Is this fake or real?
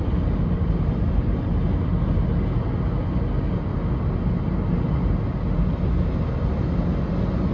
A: real